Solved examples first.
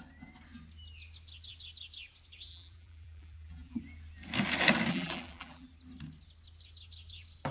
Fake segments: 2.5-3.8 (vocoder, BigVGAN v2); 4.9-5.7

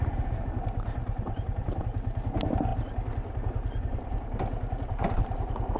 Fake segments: 1.0-1.8 (vocoder, BigVGAN v2)

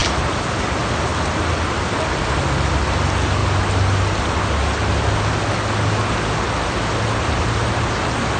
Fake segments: none

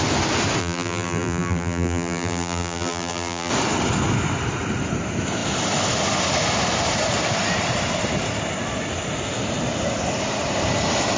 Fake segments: 0.6-3.5 (vocoder, BigVGAN v2)

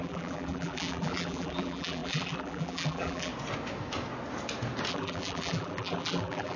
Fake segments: 0.0-3.3 (vocoder, BigVGAN v2); 4.9-6.6

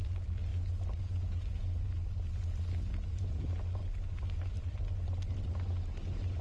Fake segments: none

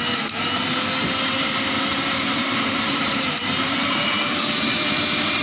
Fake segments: 1.9-5.4 (vocoder, BigVGAN v2)